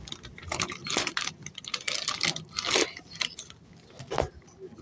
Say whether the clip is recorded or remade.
recorded